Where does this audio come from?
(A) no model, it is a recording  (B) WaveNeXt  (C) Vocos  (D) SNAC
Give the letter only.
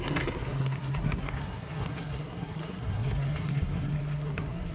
D